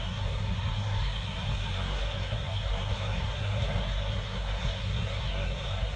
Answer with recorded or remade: remade